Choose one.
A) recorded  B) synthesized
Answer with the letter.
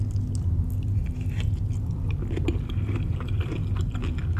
A